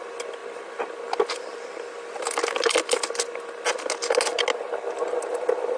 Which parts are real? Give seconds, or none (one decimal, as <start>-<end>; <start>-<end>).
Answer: 0.0-5.8